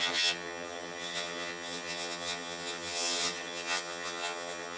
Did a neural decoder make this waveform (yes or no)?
yes